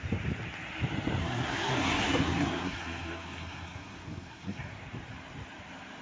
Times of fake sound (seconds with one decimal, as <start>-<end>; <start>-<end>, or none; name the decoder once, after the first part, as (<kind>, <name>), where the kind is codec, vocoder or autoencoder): 1.2-4.8 (codec, SNAC)